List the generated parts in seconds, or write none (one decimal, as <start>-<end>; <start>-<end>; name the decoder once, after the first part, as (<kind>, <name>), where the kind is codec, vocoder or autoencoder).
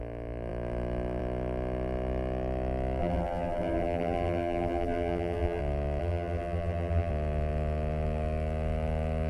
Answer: 3.0-5.6 (vocoder, BigVGAN v2); 6.0-7.1